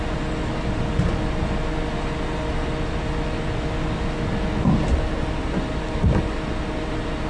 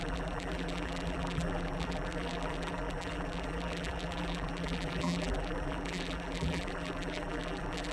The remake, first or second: second